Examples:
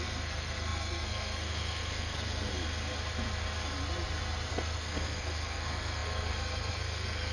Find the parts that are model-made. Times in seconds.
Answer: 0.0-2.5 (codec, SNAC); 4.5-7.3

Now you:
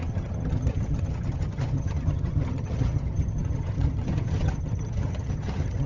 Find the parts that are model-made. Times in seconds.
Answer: 0.0-5.9 (vocoder, HiFi-GAN)

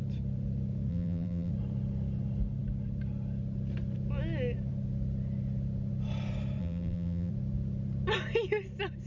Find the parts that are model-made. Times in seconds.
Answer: 0.9-1.5 (vocoder, BigVGAN v2); 6.6-7.3

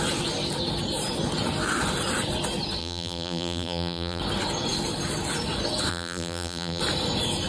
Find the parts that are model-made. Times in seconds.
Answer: 2.8-4.2 (vocoder, BigVGAN v2); 5.9-6.8

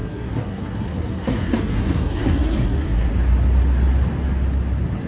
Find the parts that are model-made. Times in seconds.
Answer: 0.0-3.1 (codec, SNAC)